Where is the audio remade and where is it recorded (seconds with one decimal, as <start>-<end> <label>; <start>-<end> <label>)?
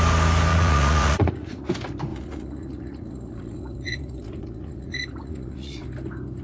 0.0-0.5 recorded; 0.5-1.7 remade; 1.7-2.1 recorded; 2.1-5.9 remade; 5.9-6.4 recorded